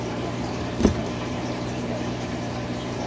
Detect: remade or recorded remade